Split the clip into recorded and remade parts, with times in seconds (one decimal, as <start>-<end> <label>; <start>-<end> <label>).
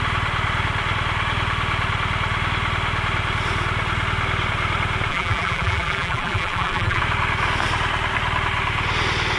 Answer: 0.0-5.1 recorded; 5.1-7.0 remade; 7.0-9.4 recorded